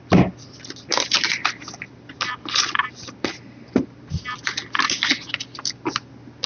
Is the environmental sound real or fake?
real